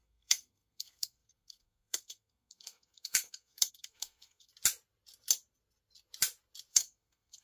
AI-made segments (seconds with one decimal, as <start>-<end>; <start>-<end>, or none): 0.0-4.5; 6.7-7.4